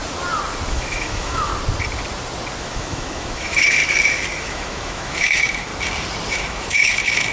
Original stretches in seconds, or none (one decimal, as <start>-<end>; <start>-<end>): 0.0-0.7; 1.5-2.6; 3.8-4.4; 5.7-6.3